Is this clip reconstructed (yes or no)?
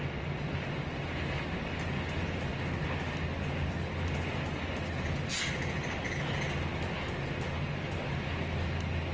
no